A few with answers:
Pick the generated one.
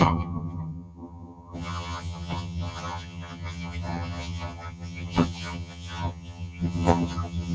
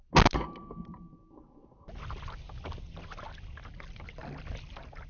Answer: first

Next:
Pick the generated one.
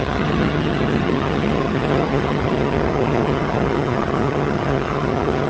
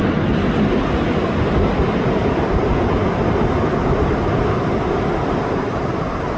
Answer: first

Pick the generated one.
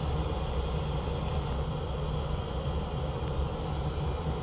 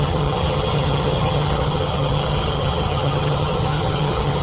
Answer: second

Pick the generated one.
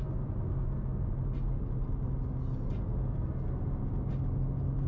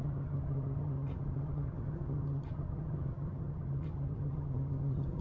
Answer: second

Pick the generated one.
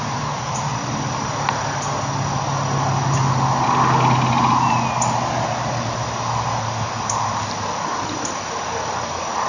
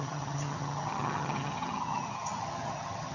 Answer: second